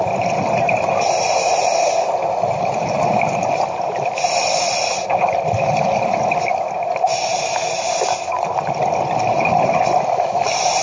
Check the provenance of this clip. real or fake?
real